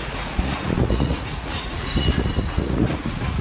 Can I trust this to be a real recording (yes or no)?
no